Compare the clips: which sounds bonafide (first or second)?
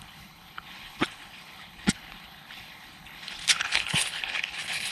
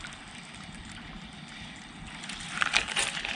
second